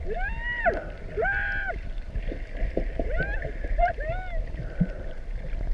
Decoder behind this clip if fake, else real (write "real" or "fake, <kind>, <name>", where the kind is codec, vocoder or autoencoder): real